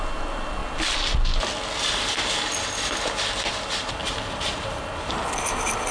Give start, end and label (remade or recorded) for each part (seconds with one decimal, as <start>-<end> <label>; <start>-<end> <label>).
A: 0.0-4.0 recorded; 4.0-5.1 remade; 5.1-5.9 recorded